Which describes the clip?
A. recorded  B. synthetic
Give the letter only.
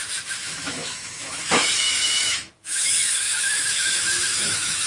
B